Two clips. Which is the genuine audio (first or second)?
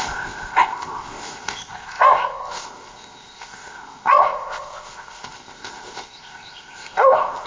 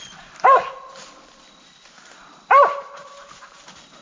second